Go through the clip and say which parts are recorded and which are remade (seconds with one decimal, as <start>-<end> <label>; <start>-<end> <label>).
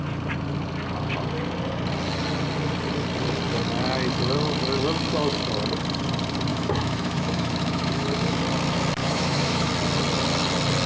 0.0-6.5 recorded; 6.5-8.4 remade; 8.4-9.0 recorded; 9.0-9.7 remade; 9.7-10.9 recorded